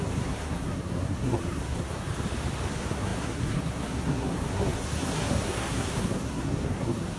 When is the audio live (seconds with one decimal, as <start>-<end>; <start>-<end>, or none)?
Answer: 2.1-2.7